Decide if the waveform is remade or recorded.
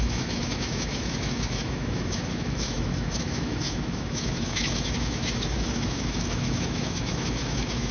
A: remade